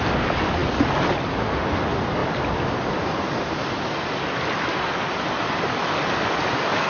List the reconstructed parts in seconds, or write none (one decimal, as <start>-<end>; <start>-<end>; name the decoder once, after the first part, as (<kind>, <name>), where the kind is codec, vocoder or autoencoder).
2.2-6.3 (vocoder, BigVGAN v2)